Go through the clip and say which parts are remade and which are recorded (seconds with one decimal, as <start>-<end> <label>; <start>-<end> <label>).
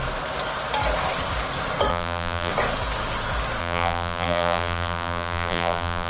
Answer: 0.0-1.9 recorded; 1.9-2.5 remade; 2.5-3.6 recorded; 3.6-6.1 remade